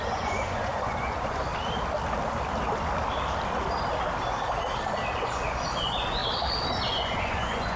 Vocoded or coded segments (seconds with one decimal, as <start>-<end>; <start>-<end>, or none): 0.0-1.5; 5.2-6.2; 6.9-7.8